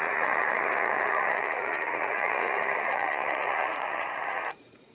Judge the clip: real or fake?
fake